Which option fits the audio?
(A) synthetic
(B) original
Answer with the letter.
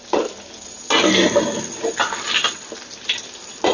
B